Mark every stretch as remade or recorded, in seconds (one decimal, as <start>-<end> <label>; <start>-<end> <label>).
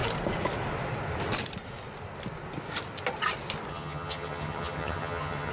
0.0-3.7 recorded; 3.7-5.5 remade